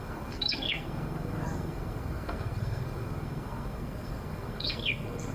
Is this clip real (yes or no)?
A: no